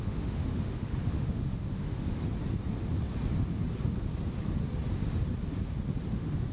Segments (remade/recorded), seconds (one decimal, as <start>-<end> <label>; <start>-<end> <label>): 0.0-2.2 remade; 2.2-6.1 recorded; 6.1-6.5 remade